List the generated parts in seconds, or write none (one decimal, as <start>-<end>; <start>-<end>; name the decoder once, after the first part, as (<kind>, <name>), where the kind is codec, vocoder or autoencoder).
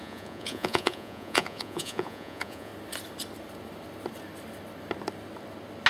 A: 0.0-2.7 (vocoder, Vocos)